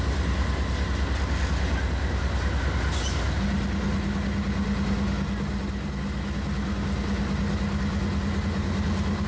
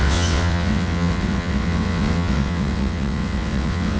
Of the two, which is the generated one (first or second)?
second